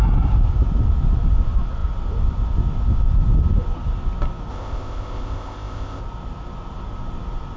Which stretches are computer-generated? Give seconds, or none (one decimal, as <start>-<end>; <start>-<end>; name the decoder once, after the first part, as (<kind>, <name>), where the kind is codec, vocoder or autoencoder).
4.5-6.0 (codec, ZipCodec)